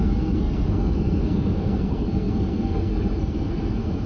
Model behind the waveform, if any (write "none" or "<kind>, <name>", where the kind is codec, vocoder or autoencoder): codec, SNAC